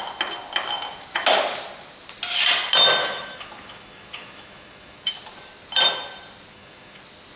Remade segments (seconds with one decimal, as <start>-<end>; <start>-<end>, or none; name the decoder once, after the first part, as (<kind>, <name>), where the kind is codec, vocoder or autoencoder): 3.0-5.1 (autoencoder, DAC-VAE); 6.5-7.0